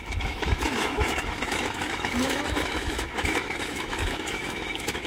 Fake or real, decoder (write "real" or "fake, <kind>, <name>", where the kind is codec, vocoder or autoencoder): fake, autoencoder, DAC-VAE